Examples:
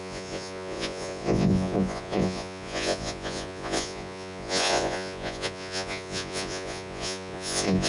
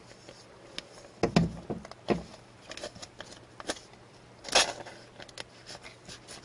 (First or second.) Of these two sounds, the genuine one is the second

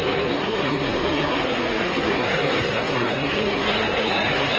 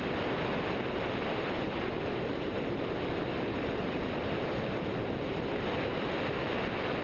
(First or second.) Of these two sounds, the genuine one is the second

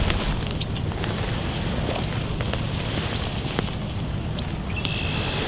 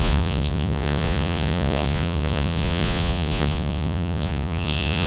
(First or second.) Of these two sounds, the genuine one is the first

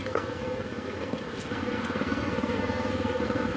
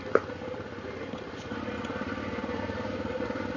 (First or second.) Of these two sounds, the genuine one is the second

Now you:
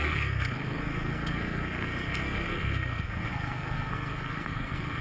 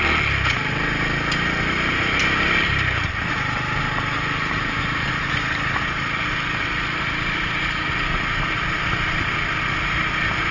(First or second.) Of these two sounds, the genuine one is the second